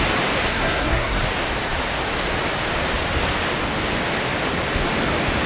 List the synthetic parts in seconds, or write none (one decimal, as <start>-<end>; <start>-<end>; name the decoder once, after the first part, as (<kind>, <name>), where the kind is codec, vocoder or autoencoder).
0.5-1.2 (codec, SNAC)